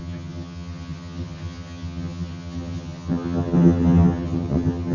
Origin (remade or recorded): remade